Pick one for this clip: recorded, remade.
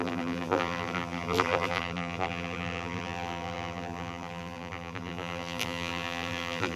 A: remade